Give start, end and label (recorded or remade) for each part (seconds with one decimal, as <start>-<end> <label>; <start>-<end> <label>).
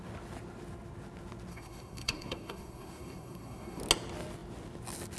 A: 0.0-1.5 recorded; 1.5-3.8 remade; 3.8-5.2 recorded